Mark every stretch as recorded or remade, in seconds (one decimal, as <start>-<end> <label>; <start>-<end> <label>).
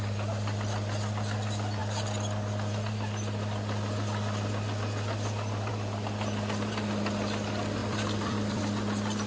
0.0-7.8 recorded; 7.8-8.6 remade; 8.6-9.3 recorded